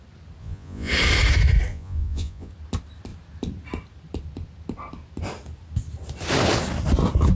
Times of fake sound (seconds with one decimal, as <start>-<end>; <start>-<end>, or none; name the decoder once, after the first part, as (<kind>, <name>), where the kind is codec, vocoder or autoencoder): 0.4-0.9 (vocoder, Vocos); 1.7-2.5